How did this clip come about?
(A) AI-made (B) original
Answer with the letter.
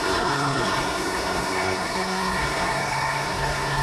A